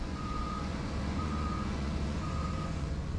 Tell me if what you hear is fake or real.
fake